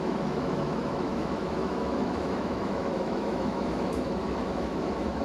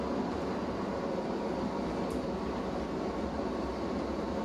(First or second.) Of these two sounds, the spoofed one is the first